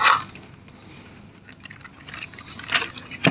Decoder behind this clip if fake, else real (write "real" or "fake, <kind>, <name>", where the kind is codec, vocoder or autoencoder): fake, vocoder, BigVGAN v2